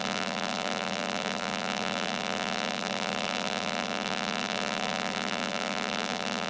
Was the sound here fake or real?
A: fake